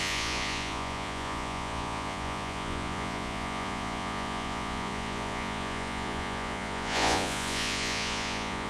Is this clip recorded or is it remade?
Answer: remade